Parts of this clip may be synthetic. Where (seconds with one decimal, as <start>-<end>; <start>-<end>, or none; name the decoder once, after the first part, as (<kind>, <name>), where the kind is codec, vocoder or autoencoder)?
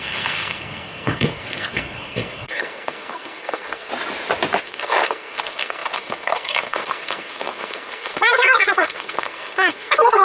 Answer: 0.0-3.9 (codec, SNAC); 4.6-10.2